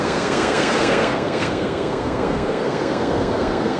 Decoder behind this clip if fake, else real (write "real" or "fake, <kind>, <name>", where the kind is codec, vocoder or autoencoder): fake, codec, SNAC